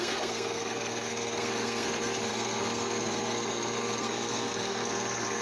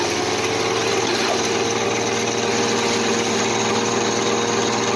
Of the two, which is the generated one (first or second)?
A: first